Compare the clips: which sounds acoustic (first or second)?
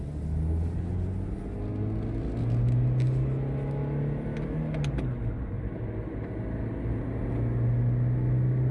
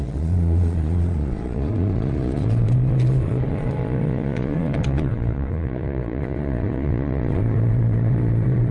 first